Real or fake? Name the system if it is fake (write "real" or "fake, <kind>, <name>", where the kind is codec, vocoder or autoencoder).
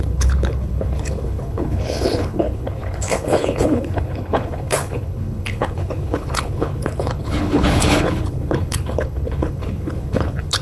fake, codec, HILCodec